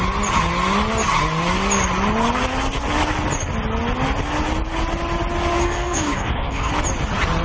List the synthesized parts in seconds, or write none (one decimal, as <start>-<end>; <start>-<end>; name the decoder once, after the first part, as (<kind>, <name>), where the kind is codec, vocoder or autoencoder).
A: 5.6-6.7 (codec, DAC)